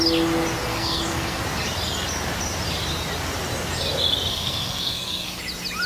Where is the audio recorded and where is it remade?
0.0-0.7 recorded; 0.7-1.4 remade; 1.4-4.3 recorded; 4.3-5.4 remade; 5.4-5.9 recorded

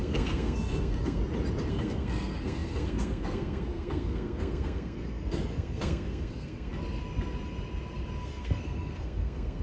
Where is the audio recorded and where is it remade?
0.0-1.2 remade; 1.2-1.7 recorded; 1.7-6.7 remade; 6.7-8.2 recorded; 8.2-9.6 remade

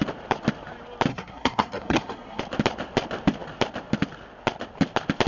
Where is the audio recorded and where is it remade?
0.0-1.1 recorded; 1.1-2.4 remade; 2.4-5.3 recorded

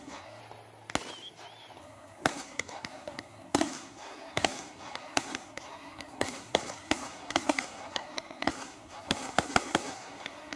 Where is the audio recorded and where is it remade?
0.0-0.4 remade; 0.4-1.8 recorded; 1.8-10.6 remade

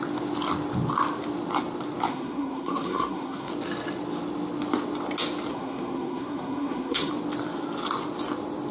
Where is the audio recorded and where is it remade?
0.0-2.1 recorded; 2.1-3.5 remade; 3.5-5.5 recorded; 5.5-7.1 remade; 7.1-8.7 recorded

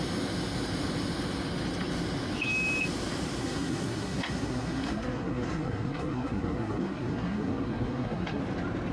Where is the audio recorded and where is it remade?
0.0-3.4 recorded; 3.4-8.4 remade; 8.4-8.9 recorded